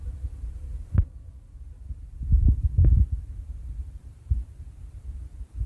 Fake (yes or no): yes